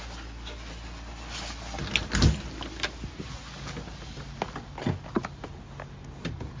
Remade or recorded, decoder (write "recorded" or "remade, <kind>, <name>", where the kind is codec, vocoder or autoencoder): recorded